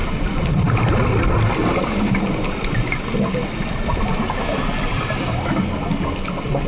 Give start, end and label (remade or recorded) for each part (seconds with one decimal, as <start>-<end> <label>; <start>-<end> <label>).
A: 0.0-6.7 recorded